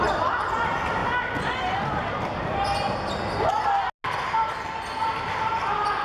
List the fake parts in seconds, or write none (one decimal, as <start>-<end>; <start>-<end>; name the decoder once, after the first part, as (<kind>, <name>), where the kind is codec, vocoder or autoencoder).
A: none